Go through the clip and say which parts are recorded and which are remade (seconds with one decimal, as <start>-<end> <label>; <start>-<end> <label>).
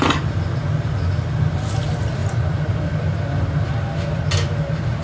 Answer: 0.0-5.0 recorded